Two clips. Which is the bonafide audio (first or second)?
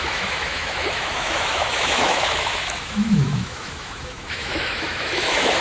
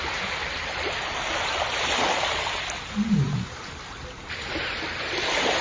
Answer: second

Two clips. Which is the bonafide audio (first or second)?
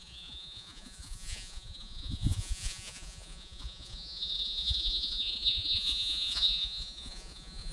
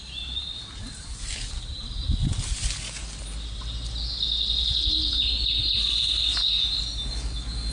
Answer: second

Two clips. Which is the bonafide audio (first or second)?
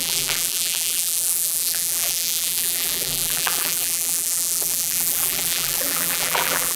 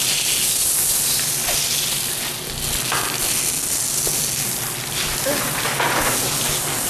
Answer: second